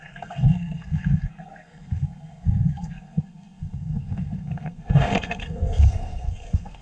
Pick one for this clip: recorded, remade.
remade